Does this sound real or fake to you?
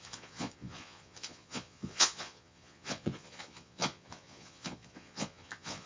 fake